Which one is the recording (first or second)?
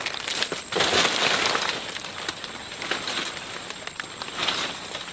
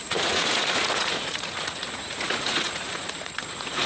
first